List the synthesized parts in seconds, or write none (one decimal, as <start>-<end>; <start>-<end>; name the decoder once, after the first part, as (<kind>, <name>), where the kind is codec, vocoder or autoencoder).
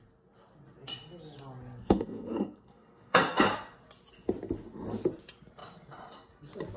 1.8-3.4 (codec, SNAC)